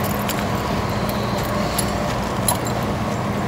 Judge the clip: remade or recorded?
recorded